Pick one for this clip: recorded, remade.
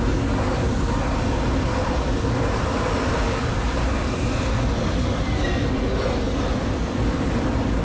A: recorded